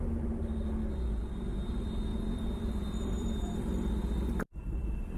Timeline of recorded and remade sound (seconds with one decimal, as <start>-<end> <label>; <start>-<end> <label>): 0.0-2.1 recorded; 2.1-5.2 remade